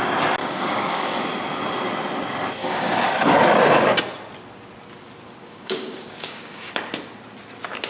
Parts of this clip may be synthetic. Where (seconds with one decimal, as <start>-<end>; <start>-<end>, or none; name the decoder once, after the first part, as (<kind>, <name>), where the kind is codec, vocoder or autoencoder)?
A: 0.4-1.2 (codec, DAC); 2.6-3.1; 5.4-6.6